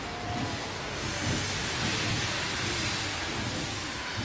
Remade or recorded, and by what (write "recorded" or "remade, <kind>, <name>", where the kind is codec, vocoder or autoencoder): recorded